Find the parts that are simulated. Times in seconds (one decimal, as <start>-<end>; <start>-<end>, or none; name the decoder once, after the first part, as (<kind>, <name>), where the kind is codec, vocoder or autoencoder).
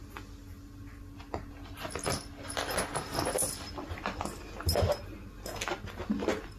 none